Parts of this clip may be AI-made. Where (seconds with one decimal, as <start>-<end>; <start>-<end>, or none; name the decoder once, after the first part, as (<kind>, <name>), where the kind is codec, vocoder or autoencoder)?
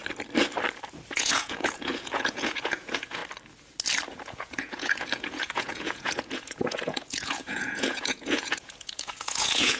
1.1-3.2 (vocoder, Vocos); 4.1-9.8